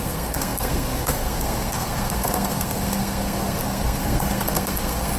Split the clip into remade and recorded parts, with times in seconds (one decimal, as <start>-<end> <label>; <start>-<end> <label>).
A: 0.0-5.2 remade